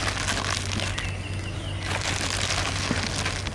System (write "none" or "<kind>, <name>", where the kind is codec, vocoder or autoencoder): none